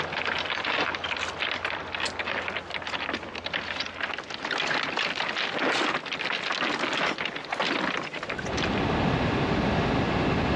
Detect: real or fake real